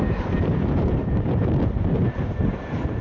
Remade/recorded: remade